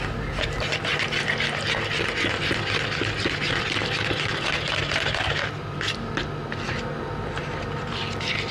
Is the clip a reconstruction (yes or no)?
no